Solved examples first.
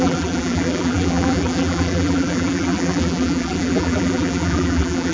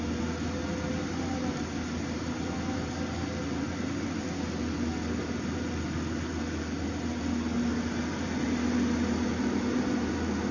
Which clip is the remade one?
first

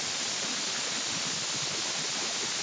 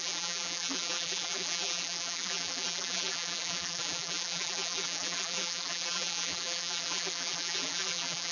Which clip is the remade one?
second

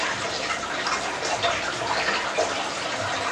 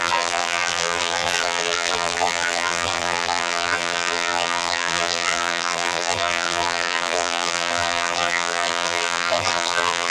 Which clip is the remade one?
second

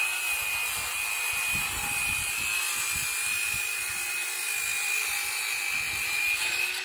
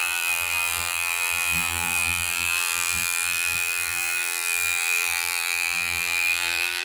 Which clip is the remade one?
second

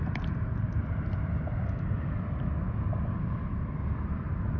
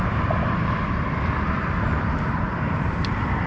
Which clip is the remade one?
second